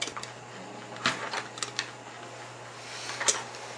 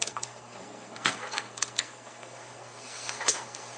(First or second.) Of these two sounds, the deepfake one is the second